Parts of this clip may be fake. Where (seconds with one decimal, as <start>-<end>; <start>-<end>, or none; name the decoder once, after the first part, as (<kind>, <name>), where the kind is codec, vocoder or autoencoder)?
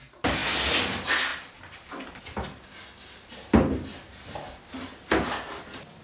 none